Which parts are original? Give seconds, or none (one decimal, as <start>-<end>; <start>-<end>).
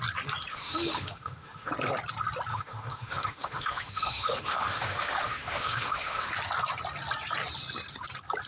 0.0-0.5; 1.7-2.5; 6.3-8.5